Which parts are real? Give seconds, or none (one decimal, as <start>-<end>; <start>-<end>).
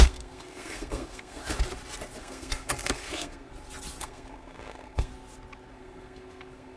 1.4-2.2; 3.5-4.0; 5.1-5.7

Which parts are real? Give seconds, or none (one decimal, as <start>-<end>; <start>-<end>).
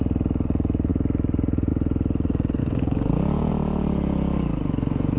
0.0-2.6; 3.5-5.2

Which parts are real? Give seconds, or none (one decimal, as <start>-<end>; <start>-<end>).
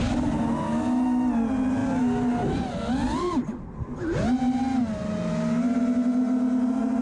0.0-7.0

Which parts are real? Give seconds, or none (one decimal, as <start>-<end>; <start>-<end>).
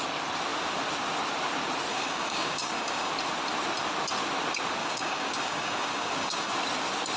0.0-1.9; 3.1-4.8; 6.5-7.2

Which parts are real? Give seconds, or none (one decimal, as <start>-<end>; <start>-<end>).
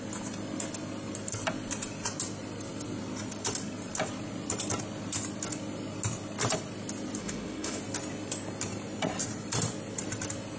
0.0-7.2; 7.8-10.6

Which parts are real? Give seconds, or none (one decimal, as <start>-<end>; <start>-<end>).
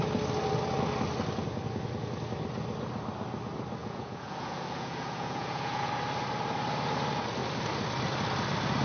0.0-3.8; 5.9-8.8